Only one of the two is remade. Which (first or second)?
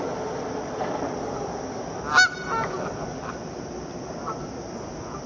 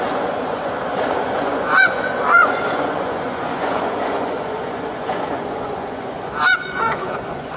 second